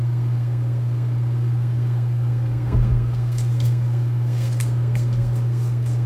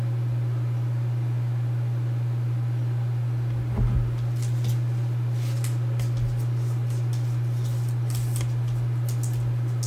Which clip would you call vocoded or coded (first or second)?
first